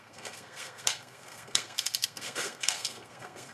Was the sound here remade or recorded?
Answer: remade